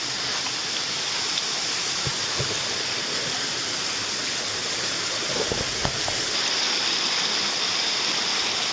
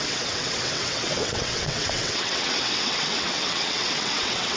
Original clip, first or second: first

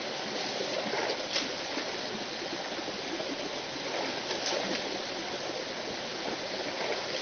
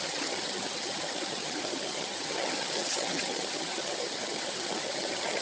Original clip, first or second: first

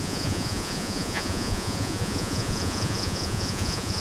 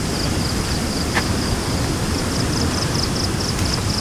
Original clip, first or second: second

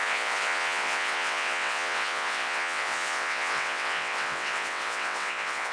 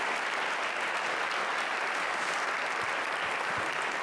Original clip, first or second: second